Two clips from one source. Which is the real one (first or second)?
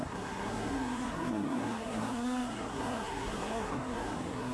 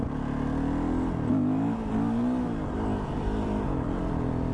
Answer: second